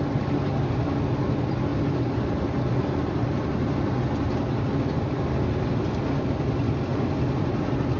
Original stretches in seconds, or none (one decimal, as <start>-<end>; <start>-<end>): 0.0-8.0